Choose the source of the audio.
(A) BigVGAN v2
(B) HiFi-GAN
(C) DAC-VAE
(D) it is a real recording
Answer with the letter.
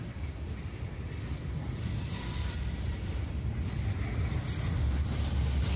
A